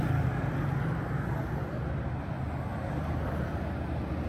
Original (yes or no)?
yes